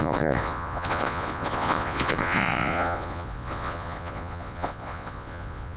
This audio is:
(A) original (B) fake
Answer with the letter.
B